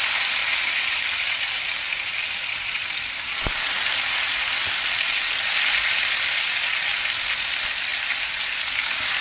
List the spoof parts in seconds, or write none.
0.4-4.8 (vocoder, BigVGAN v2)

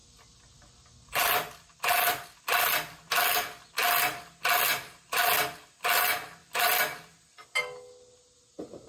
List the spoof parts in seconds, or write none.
none

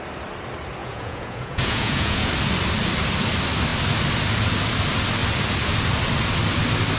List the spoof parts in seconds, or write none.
0.8-2.3 (vocoder, Vocos)

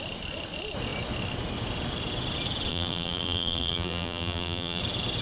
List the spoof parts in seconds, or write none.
2.7-4.8 (vocoder, BigVGAN v2)

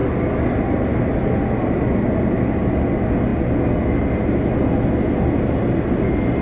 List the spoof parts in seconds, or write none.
none

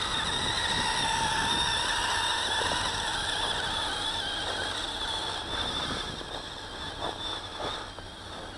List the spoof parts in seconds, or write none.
none

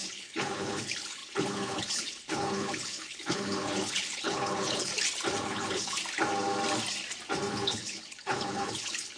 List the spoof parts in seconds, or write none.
0.0-4.9 (codec, HILCodec); 5.4-6.0; 7.5-9.2